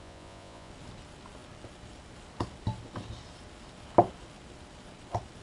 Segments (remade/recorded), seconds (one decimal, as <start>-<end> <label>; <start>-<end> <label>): 0.0-0.7 remade; 0.7-5.4 recorded